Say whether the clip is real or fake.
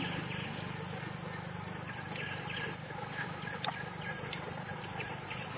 real